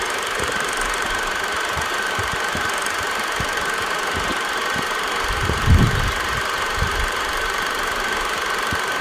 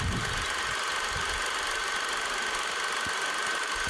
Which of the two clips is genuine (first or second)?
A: second